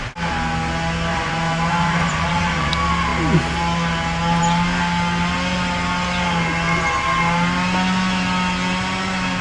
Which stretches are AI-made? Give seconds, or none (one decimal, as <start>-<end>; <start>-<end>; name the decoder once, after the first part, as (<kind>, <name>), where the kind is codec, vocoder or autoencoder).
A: 1.1-2.7 (vocoder, Vocos)